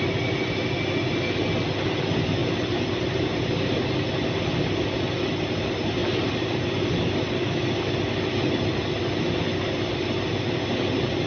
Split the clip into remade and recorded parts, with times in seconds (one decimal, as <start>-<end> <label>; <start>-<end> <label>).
0.0-11.3 recorded